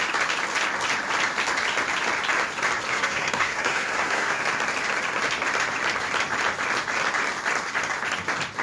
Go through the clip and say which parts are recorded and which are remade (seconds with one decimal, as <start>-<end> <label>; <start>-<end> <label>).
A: 0.0-2.9 recorded; 2.9-4.4 remade; 4.4-8.6 recorded